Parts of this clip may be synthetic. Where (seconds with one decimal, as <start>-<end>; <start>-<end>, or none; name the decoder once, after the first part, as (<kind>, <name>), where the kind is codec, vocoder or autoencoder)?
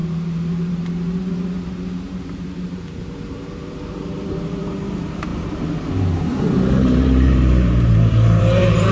0.5-8.9 (vocoder, BigVGAN v2)